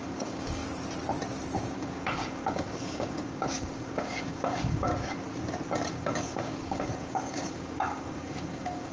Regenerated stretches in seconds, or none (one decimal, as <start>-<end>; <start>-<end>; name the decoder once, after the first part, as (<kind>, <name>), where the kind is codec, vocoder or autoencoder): 0.0-0.6 (codec, DAC); 1.6-4.9; 5.9-8.9